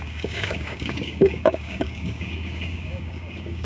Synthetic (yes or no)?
yes